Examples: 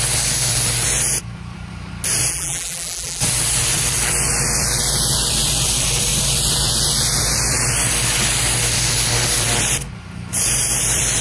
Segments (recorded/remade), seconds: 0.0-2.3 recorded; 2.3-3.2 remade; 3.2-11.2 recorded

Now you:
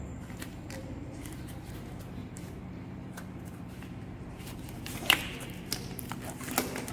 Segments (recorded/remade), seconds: 0.0-0.8 recorded; 0.8-1.4 remade; 1.4-2.2 recorded; 2.2-6.1 remade; 6.1-6.9 recorded